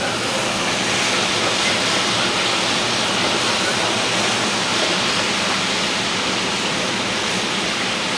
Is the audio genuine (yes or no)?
yes